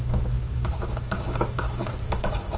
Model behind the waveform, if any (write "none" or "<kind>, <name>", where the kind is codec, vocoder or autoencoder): codec, DAC